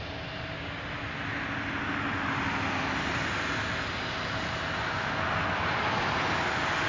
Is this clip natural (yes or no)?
yes